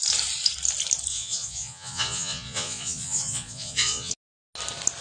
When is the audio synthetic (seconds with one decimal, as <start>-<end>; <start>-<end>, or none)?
1.1-4.1